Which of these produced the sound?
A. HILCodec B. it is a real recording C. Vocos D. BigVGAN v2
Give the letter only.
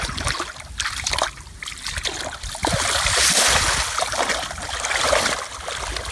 B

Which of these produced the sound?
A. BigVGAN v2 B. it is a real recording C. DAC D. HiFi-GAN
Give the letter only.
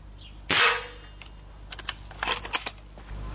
B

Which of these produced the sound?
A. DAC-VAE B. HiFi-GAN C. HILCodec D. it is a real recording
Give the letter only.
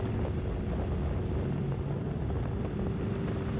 D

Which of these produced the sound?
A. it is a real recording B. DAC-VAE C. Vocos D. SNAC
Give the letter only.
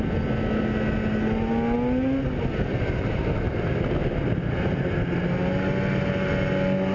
A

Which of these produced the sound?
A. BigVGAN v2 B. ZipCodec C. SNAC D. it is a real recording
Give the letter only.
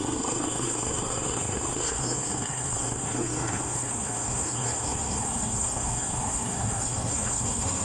C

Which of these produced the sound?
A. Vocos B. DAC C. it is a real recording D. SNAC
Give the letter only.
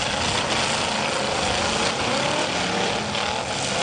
C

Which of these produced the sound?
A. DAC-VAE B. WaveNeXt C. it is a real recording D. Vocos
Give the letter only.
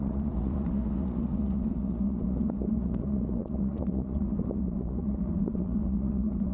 D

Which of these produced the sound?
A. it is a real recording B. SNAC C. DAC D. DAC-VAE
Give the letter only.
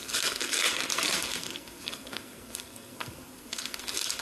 B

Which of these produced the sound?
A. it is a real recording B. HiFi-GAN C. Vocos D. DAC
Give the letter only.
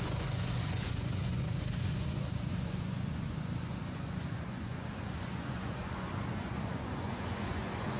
C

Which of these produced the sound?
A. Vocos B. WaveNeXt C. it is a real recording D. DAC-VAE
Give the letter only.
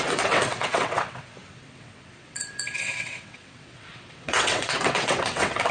B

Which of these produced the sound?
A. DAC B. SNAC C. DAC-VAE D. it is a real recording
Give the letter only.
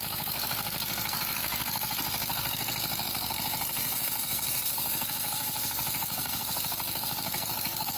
B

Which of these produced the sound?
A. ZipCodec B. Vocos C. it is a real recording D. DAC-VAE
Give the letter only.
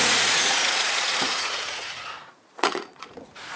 B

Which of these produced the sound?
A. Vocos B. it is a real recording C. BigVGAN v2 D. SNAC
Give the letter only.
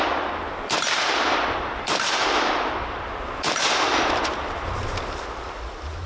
C